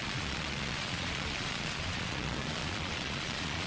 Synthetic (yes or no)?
yes